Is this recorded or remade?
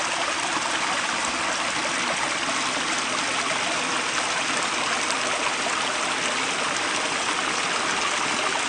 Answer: recorded